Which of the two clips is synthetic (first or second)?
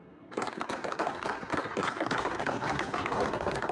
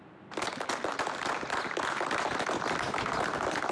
first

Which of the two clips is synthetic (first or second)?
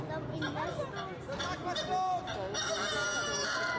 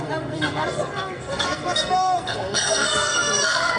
second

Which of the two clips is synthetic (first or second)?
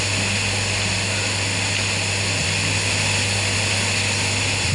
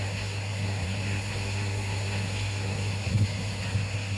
second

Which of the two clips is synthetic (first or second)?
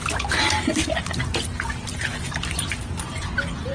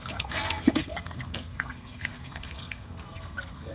second